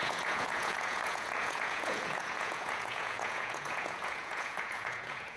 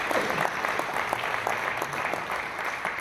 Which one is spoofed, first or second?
first